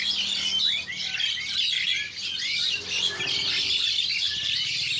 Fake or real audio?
real